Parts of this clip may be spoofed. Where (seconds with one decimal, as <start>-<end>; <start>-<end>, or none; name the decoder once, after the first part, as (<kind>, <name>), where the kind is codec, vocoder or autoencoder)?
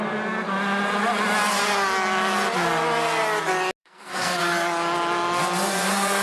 3.8-4.4 (codec, SNAC)